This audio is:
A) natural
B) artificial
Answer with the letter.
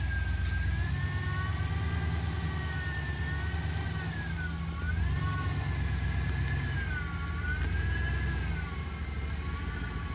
A